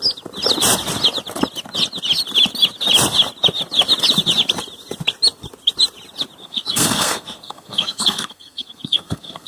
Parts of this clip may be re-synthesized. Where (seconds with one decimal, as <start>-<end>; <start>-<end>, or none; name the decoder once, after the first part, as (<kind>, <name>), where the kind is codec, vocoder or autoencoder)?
6.4-9.5 (codec, SNAC)